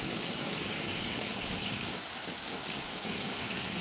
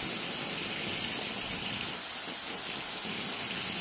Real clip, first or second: second